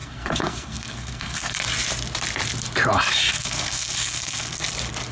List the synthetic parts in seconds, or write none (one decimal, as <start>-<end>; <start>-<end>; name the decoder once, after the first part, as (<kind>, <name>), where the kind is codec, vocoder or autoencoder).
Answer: 0.0-1.6 (codec, SNAC); 3.3-4.6